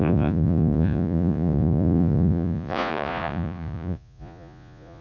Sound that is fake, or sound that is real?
fake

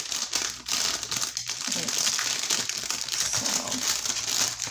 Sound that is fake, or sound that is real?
real